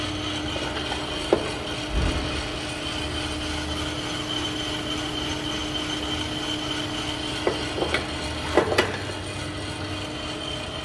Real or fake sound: real